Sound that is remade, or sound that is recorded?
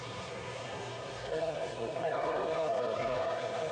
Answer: remade